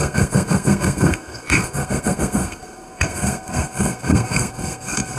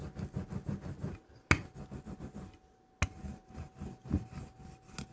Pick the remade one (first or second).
first